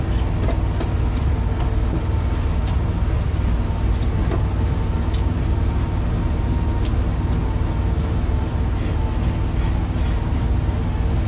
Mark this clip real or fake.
real